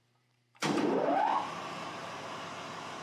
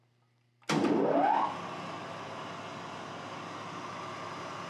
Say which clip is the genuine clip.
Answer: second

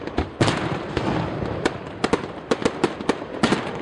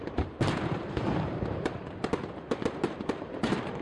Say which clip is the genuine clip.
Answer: first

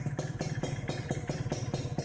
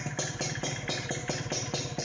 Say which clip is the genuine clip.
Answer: second